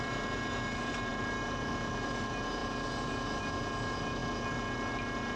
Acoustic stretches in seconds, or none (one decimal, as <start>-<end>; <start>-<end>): 0.0-5.4